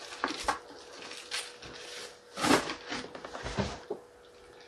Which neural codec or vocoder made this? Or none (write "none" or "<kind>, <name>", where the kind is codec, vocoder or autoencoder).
none